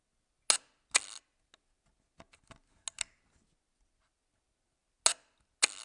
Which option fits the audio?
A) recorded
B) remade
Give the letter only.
A